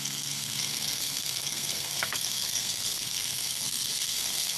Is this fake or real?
fake